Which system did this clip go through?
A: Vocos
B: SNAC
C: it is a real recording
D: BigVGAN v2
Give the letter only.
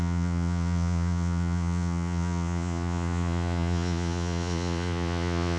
A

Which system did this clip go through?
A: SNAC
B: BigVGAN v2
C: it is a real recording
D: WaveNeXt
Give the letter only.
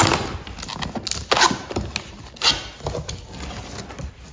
C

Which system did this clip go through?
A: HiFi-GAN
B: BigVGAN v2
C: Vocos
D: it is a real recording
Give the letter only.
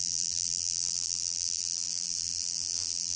B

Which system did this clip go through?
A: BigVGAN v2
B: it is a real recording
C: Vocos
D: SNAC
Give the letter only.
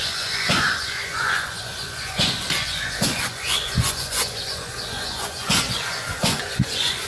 C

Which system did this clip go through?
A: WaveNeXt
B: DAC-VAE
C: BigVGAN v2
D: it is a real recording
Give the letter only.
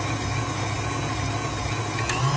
D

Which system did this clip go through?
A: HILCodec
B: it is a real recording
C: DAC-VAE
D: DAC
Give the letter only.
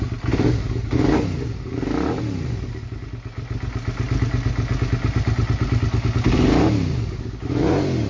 B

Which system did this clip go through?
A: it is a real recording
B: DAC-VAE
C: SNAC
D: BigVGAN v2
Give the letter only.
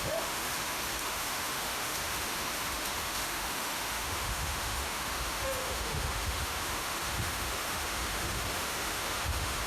B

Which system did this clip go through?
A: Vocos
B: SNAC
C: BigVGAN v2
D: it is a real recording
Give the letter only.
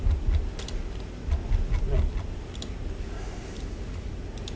D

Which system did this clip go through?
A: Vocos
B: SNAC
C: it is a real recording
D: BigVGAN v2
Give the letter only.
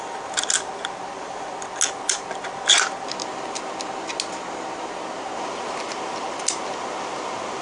C